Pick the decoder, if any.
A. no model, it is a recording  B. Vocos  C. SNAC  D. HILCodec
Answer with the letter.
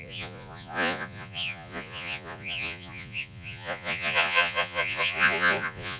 B